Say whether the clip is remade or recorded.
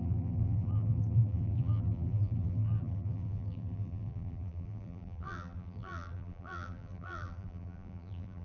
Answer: remade